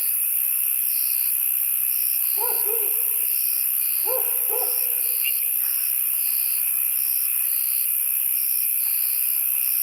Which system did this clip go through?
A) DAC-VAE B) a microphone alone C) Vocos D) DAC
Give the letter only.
B